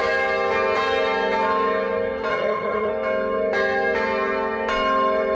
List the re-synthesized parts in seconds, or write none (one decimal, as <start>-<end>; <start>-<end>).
2.3-2.9